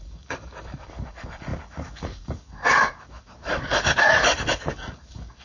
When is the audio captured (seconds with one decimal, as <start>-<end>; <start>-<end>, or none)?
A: none